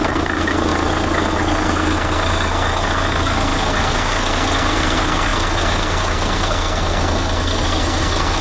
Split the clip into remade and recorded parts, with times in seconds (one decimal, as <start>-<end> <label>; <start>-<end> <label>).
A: 0.0-8.4 remade